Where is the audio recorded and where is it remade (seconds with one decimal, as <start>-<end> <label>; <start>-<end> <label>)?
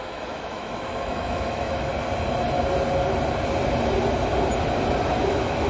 0.0-1.9 remade; 1.9-5.3 recorded; 5.3-5.7 remade